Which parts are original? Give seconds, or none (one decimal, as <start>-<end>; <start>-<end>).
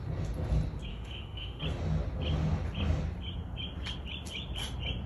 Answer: 0.0-0.9; 1.6-5.1